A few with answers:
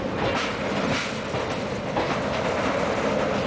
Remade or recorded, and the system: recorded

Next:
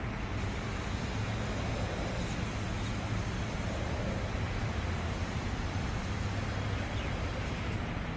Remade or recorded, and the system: recorded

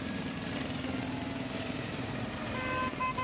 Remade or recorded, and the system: recorded